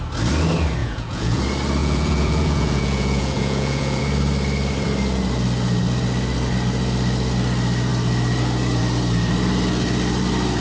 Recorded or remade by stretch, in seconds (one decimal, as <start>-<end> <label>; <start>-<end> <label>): 0.0-0.8 recorded; 0.8-1.4 remade; 1.4-1.8 recorded; 1.8-4.0 remade; 4.0-10.6 recorded